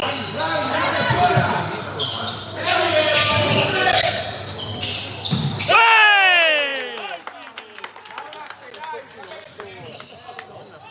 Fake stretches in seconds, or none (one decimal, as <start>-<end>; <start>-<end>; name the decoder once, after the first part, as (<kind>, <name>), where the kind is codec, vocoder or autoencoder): 3.7-4.2 (codec, SNAC)